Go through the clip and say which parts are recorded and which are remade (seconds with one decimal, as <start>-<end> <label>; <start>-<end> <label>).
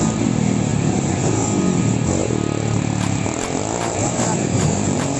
0.0-5.2 recorded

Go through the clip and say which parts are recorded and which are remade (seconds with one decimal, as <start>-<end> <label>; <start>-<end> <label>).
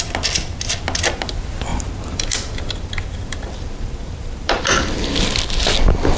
0.0-1.7 recorded; 1.7-4.6 remade; 4.6-6.2 recorded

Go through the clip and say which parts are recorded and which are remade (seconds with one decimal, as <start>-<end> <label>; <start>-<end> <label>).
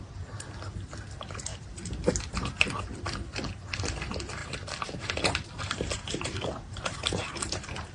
0.0-1.5 recorded; 1.5-2.8 remade; 2.8-4.4 recorded; 4.4-7.9 remade